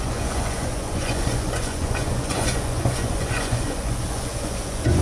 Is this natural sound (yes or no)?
no